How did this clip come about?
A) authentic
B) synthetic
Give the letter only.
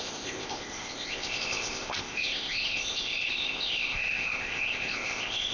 B